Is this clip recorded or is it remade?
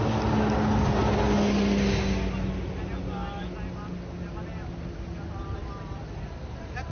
recorded